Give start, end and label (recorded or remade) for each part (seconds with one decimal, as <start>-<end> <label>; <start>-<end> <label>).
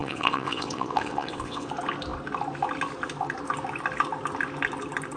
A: 0.0-1.7 remade; 1.7-5.2 recorded